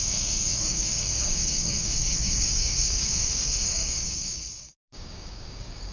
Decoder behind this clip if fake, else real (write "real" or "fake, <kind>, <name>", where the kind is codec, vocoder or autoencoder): fake, codec, DAC